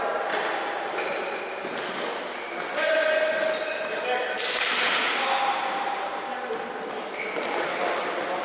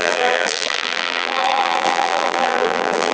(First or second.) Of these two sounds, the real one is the first